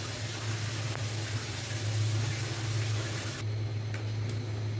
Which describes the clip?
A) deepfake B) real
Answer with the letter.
B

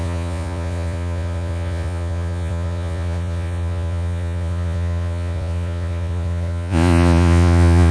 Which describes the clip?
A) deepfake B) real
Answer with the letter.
A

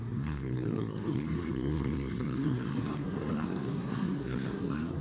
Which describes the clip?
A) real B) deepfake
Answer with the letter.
B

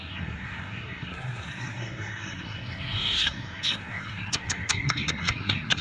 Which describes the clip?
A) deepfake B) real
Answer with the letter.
A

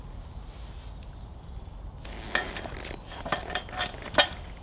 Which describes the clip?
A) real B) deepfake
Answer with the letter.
A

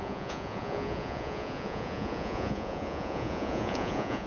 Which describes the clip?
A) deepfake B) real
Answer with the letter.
A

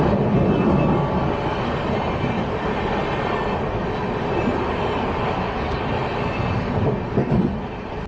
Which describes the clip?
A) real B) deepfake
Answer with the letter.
A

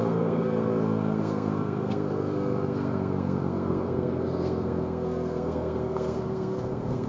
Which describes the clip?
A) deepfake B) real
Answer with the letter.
A